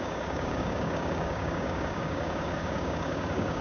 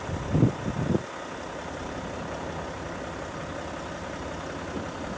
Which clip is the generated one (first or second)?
first